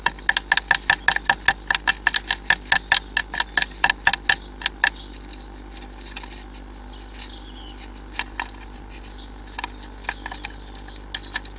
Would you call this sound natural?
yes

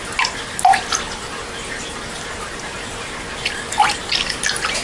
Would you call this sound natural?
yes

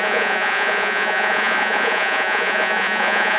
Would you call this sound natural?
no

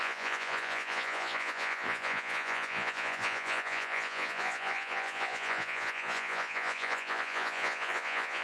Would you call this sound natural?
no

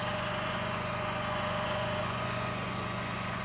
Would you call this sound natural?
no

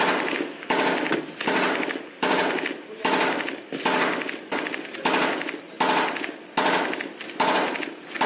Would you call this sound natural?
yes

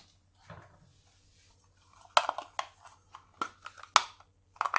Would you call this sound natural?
yes